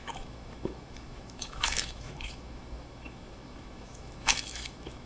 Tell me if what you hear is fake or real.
fake